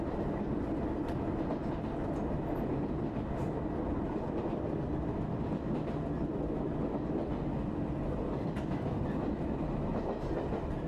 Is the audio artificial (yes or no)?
no